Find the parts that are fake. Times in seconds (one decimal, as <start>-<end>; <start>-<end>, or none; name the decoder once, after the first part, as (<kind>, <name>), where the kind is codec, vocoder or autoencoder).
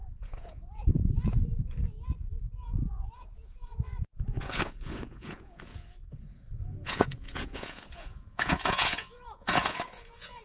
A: 0.0-10.4 (vocoder, Vocos)